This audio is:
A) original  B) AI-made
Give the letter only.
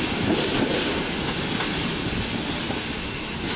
A